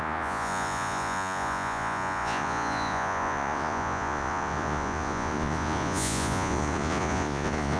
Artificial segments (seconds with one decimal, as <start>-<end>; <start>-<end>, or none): 0.0-7.8